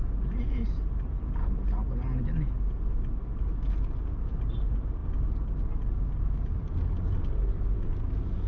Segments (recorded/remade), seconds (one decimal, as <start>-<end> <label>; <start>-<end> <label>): 0.0-8.5 recorded